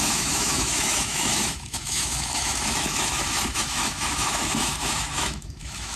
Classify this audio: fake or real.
fake